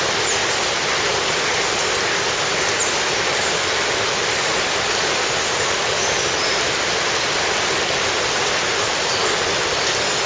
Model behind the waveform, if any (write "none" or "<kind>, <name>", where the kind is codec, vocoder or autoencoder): none